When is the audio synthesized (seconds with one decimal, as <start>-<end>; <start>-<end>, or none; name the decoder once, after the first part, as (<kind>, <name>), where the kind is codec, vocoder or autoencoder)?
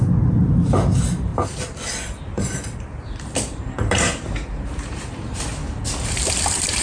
0.0-1.3 (vocoder, BigVGAN v2); 2.2-5.6